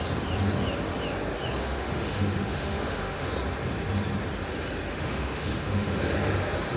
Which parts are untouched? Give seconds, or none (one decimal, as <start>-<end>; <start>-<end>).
0.0-1.6; 3.3-4.9; 6.0-6.8